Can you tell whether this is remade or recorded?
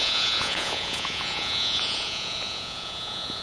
remade